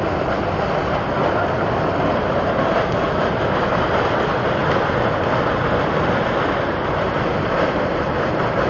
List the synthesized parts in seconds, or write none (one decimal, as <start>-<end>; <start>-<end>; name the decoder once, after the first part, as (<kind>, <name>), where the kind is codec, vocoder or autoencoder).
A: 0.0-4.6 (vocoder, BigVGAN v2); 6.9-8.7